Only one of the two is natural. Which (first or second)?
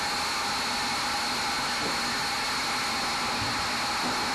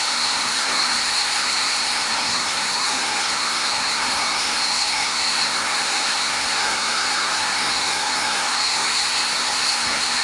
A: first